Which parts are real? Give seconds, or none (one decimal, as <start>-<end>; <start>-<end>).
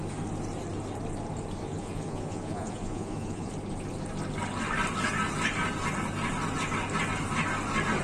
0.0-1.6; 3.5-8.0